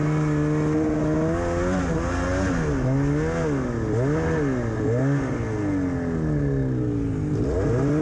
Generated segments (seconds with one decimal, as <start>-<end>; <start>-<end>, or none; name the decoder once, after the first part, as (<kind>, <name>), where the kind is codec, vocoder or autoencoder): none